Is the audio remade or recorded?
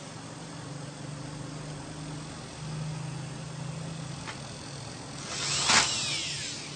recorded